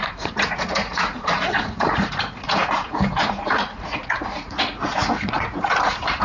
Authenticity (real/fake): fake